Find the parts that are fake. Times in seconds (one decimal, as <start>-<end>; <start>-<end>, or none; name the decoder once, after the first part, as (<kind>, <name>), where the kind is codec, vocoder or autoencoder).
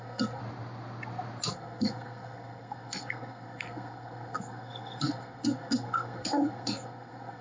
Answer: 0.0-0.4 (codec, SNAC); 1.5-7.4